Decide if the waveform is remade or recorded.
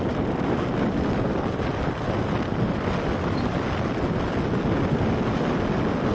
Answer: recorded